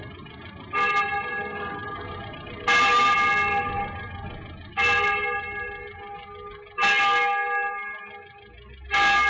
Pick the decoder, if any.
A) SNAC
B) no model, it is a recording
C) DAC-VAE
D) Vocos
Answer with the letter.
B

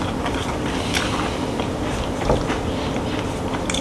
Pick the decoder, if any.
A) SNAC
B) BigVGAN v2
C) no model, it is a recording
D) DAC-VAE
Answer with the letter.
C